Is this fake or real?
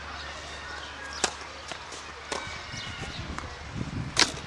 real